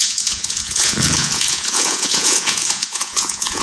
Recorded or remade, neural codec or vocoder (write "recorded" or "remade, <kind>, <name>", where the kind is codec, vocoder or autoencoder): remade, vocoder, Vocos